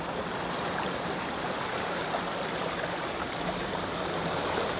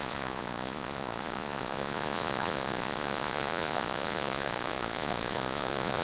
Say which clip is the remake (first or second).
second